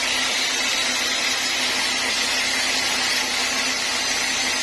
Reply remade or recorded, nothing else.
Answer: recorded